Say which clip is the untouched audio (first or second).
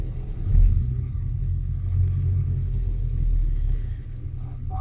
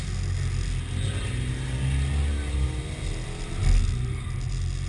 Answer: second